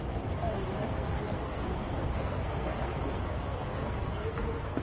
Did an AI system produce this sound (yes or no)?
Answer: yes